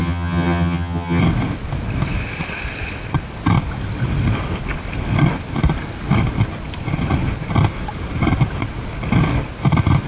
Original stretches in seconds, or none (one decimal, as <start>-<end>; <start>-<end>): 1.2-10.1